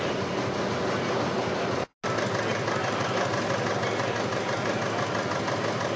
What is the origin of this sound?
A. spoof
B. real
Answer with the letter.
B